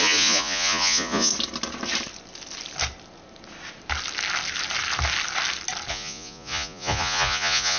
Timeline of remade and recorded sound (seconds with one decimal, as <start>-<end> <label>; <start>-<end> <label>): 0.0-1.3 remade; 1.3-5.9 recorded; 5.9-7.8 remade